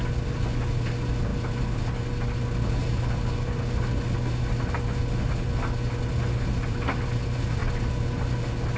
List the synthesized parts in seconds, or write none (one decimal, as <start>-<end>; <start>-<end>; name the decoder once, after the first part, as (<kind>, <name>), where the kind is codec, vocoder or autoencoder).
none